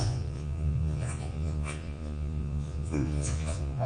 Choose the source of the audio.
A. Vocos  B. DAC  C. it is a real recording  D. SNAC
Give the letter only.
A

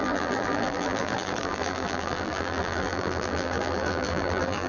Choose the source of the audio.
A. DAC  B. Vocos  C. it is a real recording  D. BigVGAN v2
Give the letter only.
D